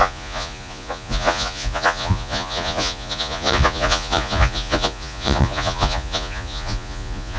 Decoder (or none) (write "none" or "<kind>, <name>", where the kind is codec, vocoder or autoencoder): vocoder, Vocos